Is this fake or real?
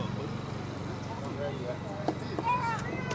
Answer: real